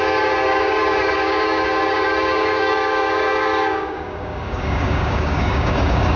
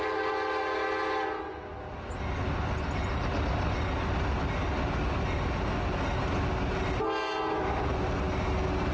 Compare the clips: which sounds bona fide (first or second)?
second